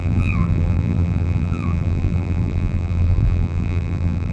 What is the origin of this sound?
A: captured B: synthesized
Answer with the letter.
B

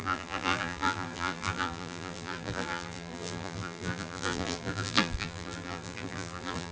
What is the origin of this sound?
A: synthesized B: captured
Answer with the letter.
A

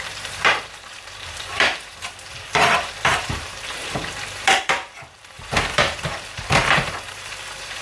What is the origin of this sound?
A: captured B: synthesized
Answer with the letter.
B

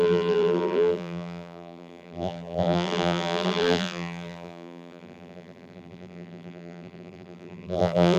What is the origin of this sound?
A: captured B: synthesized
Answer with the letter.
B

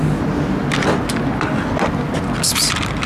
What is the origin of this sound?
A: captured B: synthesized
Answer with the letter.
A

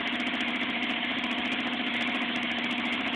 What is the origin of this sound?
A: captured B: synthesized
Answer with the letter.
A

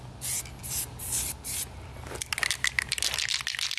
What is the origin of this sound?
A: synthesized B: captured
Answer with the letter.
B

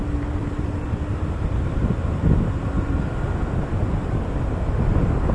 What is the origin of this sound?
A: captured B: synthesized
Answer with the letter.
B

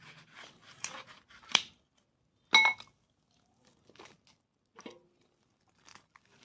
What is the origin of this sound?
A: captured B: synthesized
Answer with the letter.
A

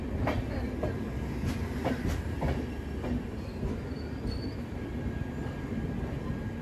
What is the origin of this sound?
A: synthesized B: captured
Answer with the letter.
B